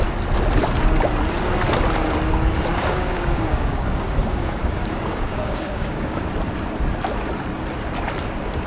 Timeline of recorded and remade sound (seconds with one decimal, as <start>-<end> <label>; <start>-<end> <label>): 0.0-2.7 recorded; 2.7-6.2 remade; 6.2-8.7 recorded